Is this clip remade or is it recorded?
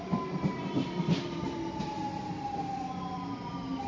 recorded